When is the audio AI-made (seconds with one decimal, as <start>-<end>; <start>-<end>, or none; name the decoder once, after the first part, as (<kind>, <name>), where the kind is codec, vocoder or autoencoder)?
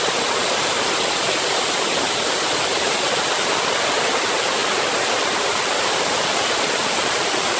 none